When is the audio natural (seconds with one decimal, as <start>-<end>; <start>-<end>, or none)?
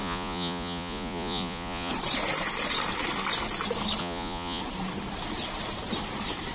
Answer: 1.9-4.0; 4.6-6.5